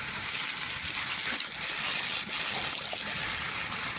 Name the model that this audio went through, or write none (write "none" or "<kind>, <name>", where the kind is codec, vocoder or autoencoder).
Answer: none